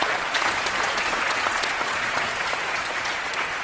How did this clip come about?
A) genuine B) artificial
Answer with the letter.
B